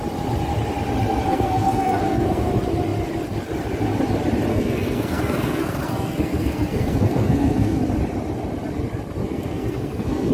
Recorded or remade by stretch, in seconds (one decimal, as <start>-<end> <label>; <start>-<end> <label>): 0.0-1.3 recorded; 1.3-2.5 remade; 2.5-4.5 recorded; 4.5-7.8 remade; 7.8-9.2 recorded; 9.2-10.3 remade